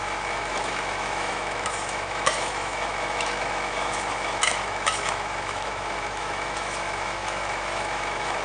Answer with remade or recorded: remade